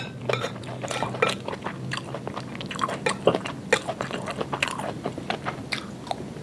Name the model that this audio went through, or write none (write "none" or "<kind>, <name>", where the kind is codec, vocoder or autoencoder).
none